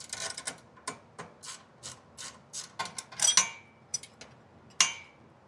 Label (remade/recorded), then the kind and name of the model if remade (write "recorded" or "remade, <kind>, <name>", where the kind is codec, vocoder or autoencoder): recorded